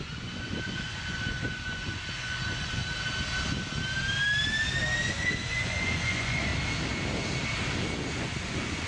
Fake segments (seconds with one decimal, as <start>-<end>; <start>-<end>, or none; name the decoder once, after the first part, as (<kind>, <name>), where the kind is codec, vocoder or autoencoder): 0.0-2.8 (vocoder, Vocos); 5.1-6.5; 8.1-8.9